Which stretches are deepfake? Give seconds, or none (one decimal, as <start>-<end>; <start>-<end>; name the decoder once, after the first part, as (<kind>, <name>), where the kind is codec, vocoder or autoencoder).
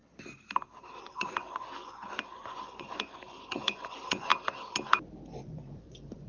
1.0-4.3 (vocoder, Vocos); 5.4-6.3